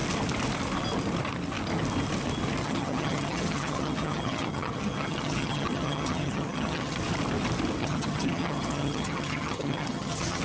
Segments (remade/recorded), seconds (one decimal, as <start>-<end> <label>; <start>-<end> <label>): 0.0-2.6 recorded; 2.6-7.0 remade; 7.0-7.8 recorded; 7.8-10.4 remade